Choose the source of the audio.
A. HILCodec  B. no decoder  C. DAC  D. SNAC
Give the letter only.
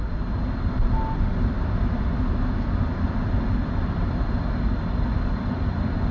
B